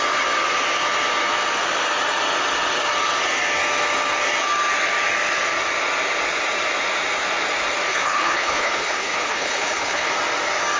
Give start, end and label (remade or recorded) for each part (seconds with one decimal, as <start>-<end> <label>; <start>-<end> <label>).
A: 0.0-7.9 recorded; 7.9-10.1 remade; 10.1-10.8 recorded